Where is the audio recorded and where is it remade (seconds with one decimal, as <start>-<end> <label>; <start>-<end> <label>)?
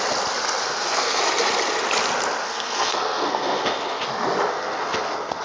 0.0-0.6 recorded; 0.6-1.2 remade; 1.2-2.4 recorded; 2.4-4.0 remade; 4.0-4.5 recorded; 4.5-5.4 remade